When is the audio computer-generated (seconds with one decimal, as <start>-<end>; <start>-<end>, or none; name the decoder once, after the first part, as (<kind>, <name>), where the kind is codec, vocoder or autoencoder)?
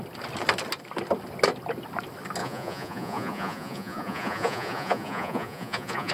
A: 2.4-6.1 (vocoder, Vocos)